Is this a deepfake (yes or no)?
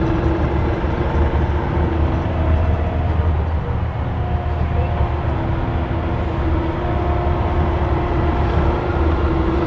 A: no